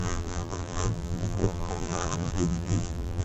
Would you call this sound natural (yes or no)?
no